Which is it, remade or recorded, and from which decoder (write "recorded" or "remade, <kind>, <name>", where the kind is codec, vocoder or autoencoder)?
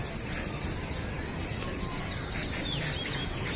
recorded